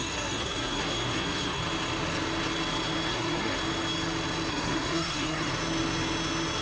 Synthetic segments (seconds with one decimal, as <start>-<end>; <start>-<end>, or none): 0.0-1.6; 3.1-3.6; 4.5-5.5